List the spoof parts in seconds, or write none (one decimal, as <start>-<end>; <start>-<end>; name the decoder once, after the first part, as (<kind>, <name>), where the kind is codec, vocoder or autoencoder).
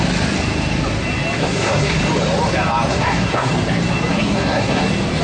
1.4-2.0 (codec, SNAC); 2.9-3.5; 4.1-4.8